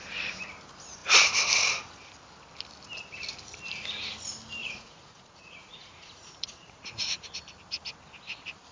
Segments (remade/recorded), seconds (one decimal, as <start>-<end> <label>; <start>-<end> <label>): 0.0-4.6 recorded; 4.6-7.3 remade; 7.3-8.7 recorded